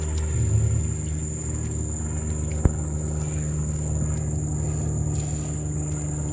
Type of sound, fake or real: real